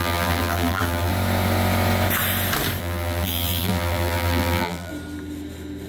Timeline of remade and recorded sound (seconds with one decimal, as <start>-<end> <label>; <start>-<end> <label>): 0.0-1.1 remade; 1.1-2.8 recorded; 2.8-4.9 remade; 4.9-5.9 recorded